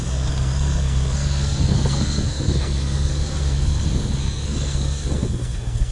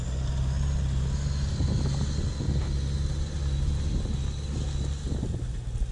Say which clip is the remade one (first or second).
first